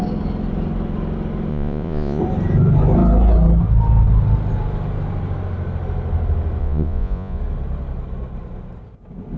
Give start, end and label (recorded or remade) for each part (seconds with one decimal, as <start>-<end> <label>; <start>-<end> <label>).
0.0-1.5 recorded; 1.5-2.2 remade; 2.2-6.6 recorded; 6.6-7.4 remade; 7.4-9.4 recorded